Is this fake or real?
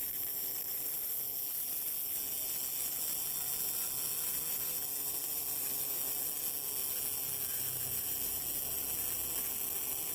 real